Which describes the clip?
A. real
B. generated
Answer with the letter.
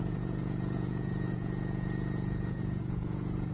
B